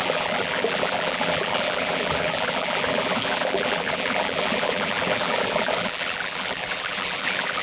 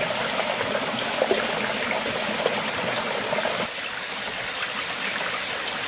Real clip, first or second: second